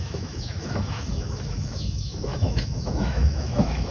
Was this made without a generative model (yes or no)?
no